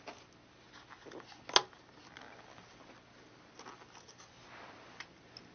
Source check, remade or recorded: recorded